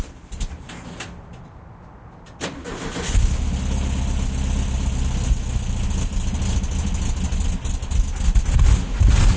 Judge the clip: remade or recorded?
recorded